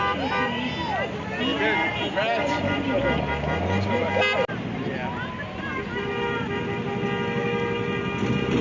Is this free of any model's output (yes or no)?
yes